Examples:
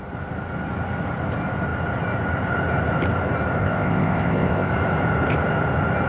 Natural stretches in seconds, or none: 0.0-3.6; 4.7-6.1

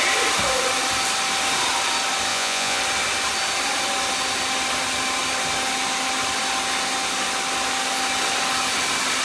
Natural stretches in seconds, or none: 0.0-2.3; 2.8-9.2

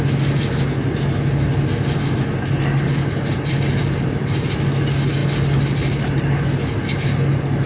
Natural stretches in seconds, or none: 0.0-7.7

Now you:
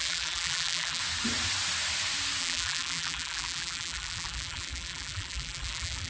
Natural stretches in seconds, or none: 1.0-2.4